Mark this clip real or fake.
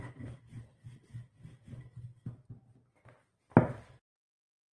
real